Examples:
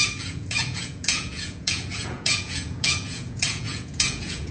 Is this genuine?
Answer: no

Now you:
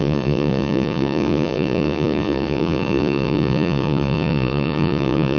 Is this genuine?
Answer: no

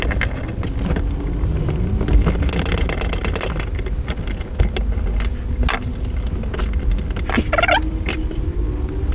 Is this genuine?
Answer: yes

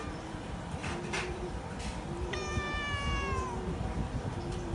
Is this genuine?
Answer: yes